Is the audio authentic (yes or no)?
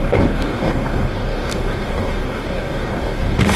no